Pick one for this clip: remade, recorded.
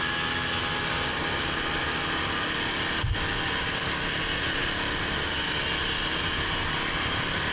recorded